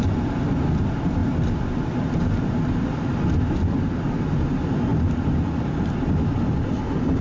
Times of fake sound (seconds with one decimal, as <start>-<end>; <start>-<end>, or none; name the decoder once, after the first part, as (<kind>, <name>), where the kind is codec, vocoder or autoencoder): none